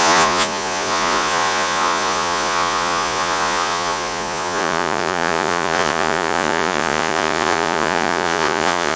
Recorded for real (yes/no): no